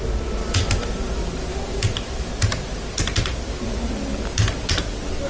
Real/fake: real